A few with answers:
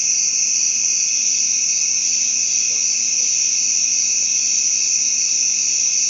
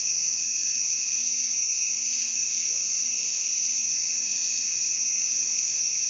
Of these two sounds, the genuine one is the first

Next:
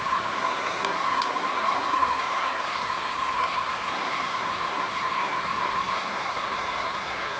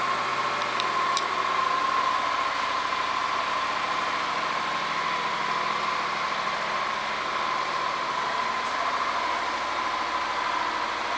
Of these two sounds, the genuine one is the second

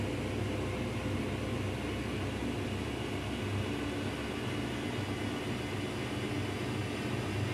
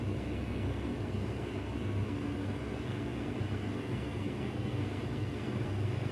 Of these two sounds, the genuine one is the first